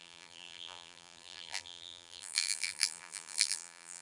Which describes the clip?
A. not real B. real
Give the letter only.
A